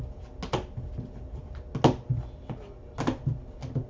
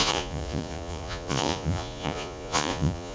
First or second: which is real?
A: first